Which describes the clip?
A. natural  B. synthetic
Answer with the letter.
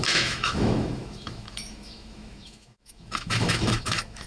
B